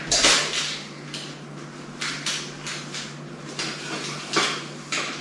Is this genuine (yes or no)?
yes